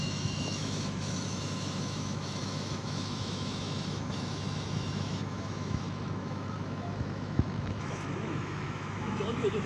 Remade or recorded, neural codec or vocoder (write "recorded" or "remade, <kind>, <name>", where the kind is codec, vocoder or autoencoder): remade, autoencoder, DAC-VAE